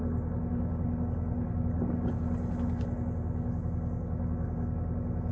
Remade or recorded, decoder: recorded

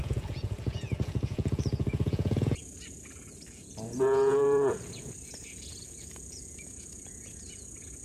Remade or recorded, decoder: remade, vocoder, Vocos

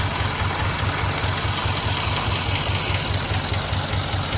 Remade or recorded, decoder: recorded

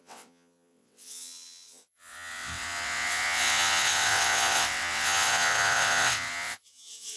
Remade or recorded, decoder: remade, vocoder, WaveNeXt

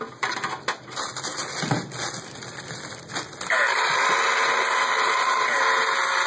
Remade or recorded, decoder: recorded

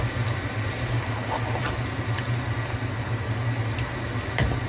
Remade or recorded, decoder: recorded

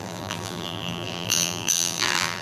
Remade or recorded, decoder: remade, vocoder, BigVGAN v2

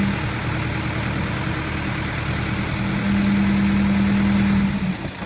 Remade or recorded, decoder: recorded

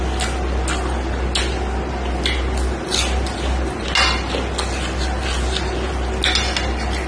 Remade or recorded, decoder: recorded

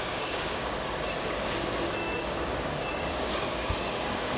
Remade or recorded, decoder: remade, codec, DAC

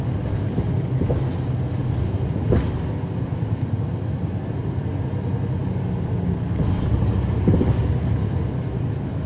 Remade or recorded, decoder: recorded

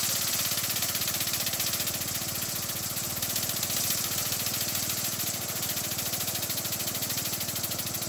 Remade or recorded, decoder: recorded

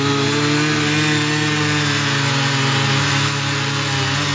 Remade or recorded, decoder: recorded